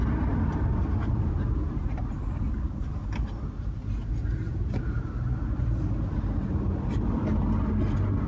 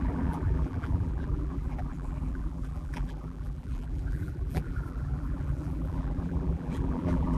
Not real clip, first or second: second